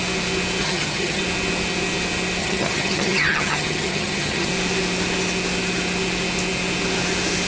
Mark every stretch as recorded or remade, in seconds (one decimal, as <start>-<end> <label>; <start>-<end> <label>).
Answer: 0.0-0.6 recorded; 0.6-1.2 remade; 1.2-2.4 recorded; 2.4-4.5 remade; 4.5-7.5 recorded